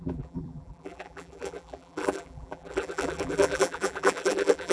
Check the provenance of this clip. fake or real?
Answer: fake